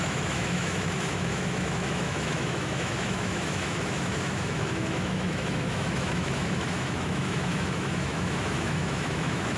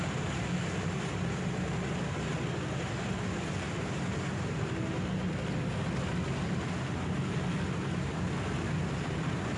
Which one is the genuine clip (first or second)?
second